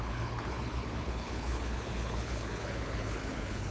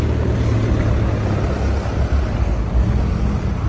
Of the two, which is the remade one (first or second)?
first